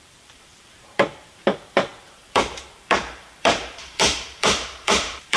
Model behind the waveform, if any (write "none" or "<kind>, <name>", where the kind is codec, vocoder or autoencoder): vocoder, BigVGAN v2